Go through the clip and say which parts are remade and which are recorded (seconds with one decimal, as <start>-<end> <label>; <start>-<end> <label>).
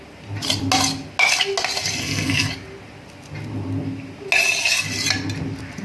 0.0-2.0 recorded; 2.0-2.5 remade; 2.5-5.8 recorded